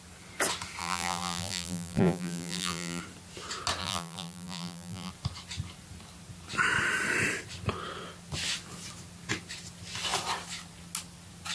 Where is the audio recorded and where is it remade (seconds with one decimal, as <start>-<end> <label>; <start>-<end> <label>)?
0.0-0.8 recorded; 0.8-3.0 remade; 3.0-3.8 recorded; 3.8-5.1 remade; 5.1-11.5 recorded